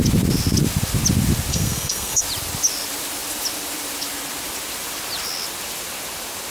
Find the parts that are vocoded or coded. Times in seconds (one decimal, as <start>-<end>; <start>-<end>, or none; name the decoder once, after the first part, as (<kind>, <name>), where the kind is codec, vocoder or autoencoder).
1.5-2.2 (codec, SNAC)